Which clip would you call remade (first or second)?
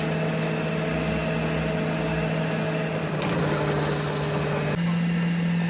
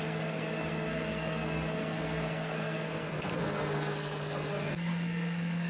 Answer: second